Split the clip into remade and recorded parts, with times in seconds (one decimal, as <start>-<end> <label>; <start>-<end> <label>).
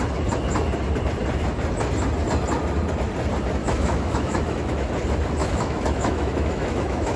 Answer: 0.0-3.6 recorded; 3.6-4.9 remade; 4.9-5.4 recorded; 5.4-7.2 remade